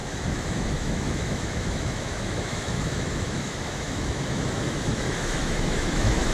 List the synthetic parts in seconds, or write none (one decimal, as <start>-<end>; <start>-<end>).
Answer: 0.0-6.3